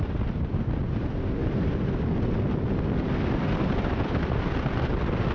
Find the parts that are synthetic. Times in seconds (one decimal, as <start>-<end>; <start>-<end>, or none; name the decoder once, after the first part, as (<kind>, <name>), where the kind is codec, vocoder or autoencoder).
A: none